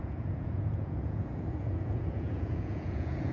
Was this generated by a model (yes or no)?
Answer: yes